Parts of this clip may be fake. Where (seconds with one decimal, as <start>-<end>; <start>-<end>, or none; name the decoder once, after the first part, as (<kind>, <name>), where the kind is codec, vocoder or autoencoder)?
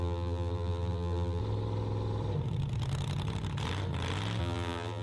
0.0-1.4 (vocoder, BigVGAN v2); 4.4-5.0